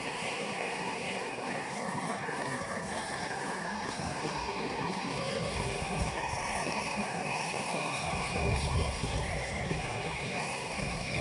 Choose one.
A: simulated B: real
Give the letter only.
A